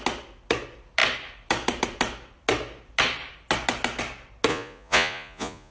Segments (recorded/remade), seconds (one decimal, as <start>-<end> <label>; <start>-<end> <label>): 0.0-4.5 recorded; 4.5-5.7 remade